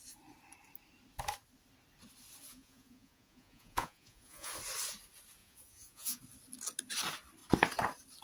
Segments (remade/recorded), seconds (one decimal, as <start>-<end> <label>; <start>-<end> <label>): 0.0-2.5 recorded; 2.5-4.5 remade; 4.5-5.4 recorded; 5.4-6.2 remade; 6.2-8.2 recorded